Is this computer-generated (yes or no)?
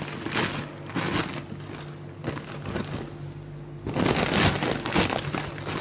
no